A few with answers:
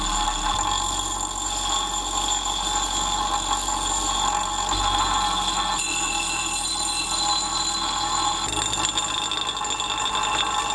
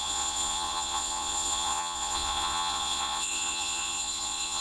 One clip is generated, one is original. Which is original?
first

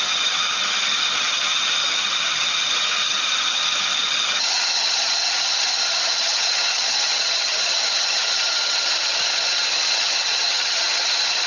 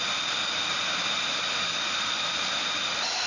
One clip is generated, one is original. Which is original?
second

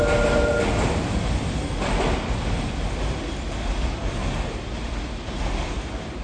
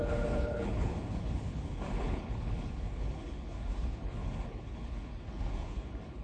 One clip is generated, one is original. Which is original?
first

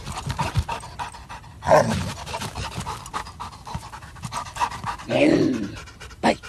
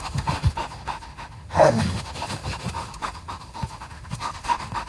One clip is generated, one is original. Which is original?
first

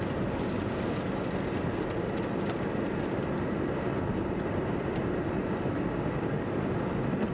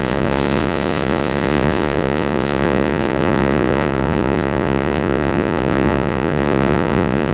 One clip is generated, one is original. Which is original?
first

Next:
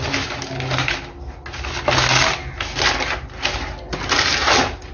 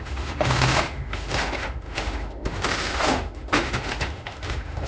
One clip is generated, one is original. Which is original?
first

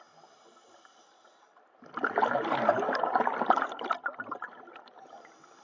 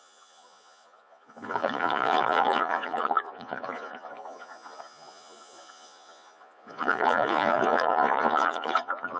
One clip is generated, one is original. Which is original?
first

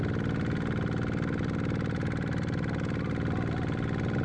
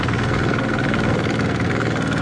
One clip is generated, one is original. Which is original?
first